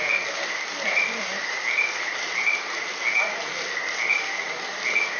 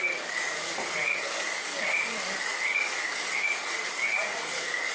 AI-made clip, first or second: second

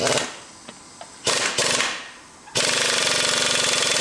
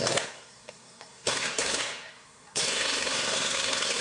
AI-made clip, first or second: second